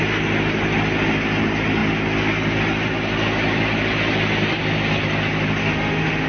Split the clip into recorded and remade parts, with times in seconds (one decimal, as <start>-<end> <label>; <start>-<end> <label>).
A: 0.0-5.6 recorded; 5.6-6.3 remade